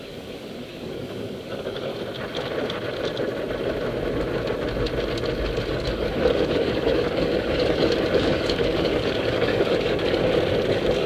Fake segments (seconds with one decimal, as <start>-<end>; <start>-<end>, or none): 0.0-1.9; 5.7-10.2; 10.7-11.1